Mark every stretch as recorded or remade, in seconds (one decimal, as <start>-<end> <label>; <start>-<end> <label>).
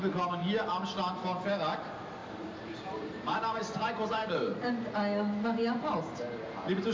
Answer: 0.0-2.2 recorded; 2.2-3.6 remade; 3.6-4.2 recorded; 4.2-4.7 remade; 4.7-6.9 recorded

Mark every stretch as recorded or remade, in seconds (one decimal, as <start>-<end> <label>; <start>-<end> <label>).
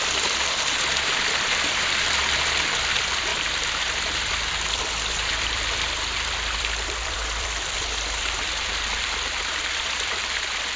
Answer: 0.0-10.8 remade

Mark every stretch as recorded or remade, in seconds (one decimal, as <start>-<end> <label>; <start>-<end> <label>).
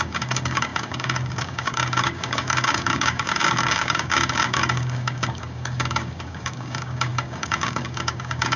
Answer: 0.0-8.6 remade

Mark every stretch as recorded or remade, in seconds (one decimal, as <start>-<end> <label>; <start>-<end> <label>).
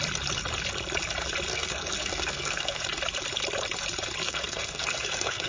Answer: 0.0-1.5 recorded; 1.5-2.8 remade; 2.8-4.2 recorded; 4.2-5.5 remade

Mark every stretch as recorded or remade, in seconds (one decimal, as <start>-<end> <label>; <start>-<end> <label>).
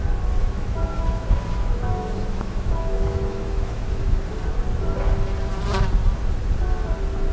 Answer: 0.0-0.4 recorded; 0.4-4.2 remade; 4.2-7.3 recorded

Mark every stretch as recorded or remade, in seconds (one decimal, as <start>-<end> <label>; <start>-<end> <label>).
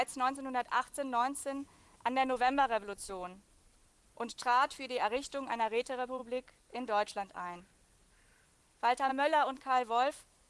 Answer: 0.0-1.4 recorded; 1.4-3.1 remade; 3.1-9.1 recorded; 9.1-10.5 remade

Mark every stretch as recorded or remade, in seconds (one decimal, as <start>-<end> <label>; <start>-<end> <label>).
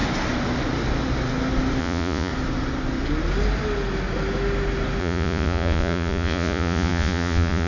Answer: 0.0-1.8 recorded; 1.8-2.3 remade; 2.3-5.0 recorded; 5.0-7.7 remade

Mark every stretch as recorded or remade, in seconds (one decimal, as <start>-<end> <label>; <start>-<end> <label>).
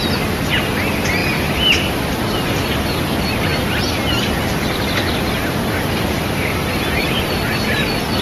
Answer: 0.0-1.2 recorded; 1.2-1.9 remade; 1.9-3.5 recorded; 3.5-7.1 remade; 7.1-8.2 recorded